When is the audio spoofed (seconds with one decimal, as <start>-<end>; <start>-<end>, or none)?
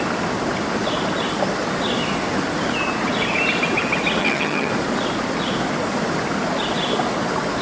4.2-4.7